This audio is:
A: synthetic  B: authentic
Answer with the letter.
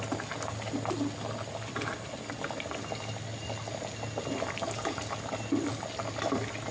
B